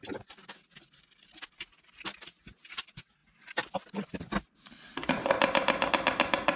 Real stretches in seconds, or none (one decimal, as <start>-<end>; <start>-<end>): 0.0-6.6